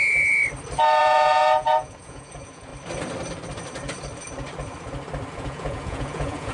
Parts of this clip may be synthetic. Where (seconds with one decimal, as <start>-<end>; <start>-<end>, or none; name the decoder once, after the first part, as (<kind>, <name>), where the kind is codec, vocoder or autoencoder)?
0.0-0.4 (vocoder, Vocos); 1.0-2.7; 5.3-6.5